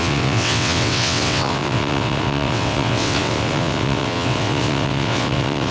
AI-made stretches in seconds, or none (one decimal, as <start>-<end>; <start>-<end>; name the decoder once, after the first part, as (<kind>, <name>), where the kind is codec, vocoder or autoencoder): 0.0-5.7 (vocoder, WaveNeXt)